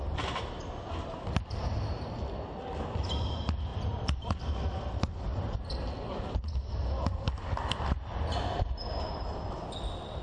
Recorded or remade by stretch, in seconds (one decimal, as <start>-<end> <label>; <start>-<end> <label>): 0.0-3.7 recorded; 3.7-4.4 remade; 4.4-10.2 recorded